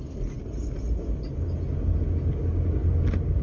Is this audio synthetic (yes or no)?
no